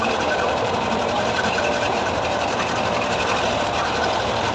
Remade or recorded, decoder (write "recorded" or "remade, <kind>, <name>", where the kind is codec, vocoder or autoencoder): remade, vocoder, BigVGAN v2